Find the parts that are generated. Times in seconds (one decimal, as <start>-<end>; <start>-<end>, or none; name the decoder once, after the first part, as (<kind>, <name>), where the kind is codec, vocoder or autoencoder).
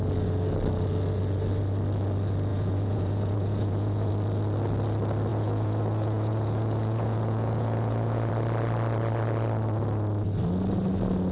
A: 2.5-4.1 (vocoder, Vocos); 5.3-8.3